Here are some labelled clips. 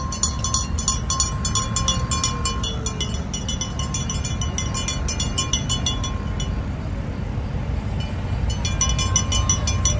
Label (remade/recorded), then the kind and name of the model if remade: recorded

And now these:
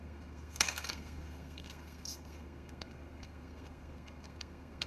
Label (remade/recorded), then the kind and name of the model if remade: remade, codec, SNAC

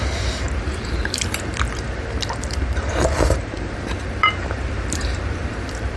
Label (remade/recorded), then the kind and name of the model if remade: remade, vocoder, BigVGAN v2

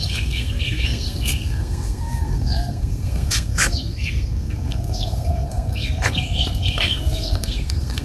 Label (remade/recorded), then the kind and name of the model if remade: remade, codec, SNAC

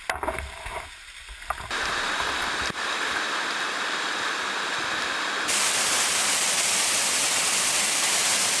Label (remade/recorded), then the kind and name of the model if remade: recorded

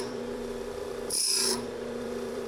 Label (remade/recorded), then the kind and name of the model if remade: remade, vocoder, BigVGAN v2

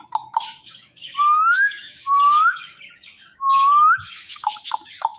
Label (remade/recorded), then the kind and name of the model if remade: remade, autoencoder, DAC-VAE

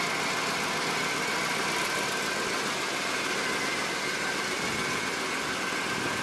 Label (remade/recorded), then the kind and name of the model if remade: recorded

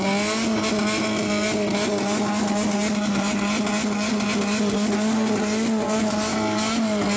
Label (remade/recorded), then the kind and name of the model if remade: recorded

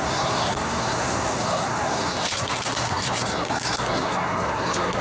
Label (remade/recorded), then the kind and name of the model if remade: remade, codec, SNAC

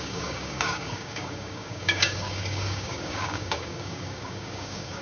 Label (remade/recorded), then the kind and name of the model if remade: remade, codec, DAC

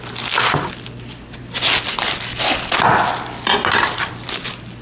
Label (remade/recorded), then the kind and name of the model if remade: recorded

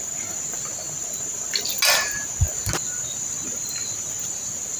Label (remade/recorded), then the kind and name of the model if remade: recorded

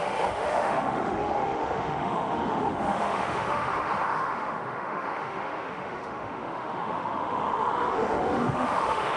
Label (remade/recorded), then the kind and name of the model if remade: remade, autoencoder, DAC-VAE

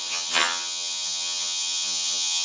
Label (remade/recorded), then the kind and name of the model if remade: remade, vocoder, HiFi-GAN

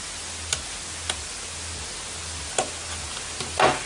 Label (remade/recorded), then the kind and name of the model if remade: recorded